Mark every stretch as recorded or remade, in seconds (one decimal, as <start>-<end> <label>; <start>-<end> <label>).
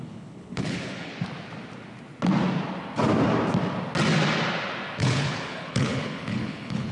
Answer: 0.0-1.1 remade; 1.1-5.0 recorded; 5.0-6.9 remade